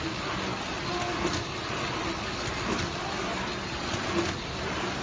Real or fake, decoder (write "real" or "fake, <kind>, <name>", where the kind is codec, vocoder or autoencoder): real